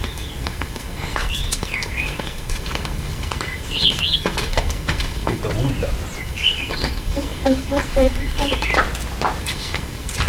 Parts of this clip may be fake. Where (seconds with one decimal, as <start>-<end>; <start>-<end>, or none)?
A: 0.0-5.4; 6.2-8.7; 9.4-10.3